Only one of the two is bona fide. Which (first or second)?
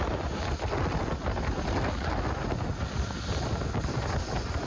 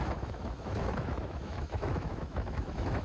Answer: first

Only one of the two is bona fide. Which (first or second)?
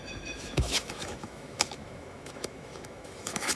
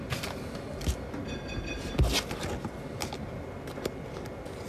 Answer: second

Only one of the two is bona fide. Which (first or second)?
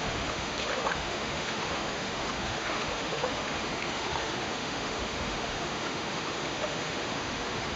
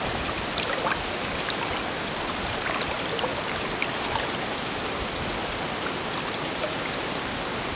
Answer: second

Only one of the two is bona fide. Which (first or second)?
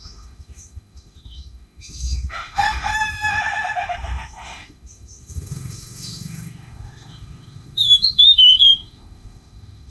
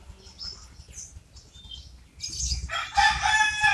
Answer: second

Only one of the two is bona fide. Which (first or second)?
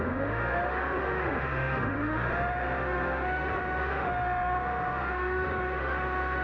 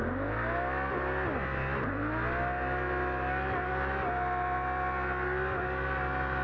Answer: second